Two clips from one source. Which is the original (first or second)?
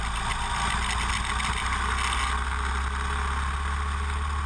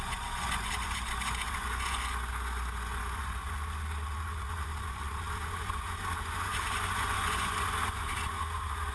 first